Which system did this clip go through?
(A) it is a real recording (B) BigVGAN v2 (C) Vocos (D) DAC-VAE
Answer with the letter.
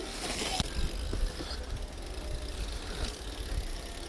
A